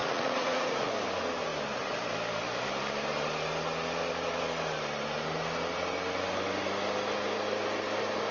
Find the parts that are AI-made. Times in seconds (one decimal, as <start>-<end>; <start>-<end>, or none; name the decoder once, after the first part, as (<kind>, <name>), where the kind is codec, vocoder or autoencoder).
0.0-0.9 (vocoder, Vocos)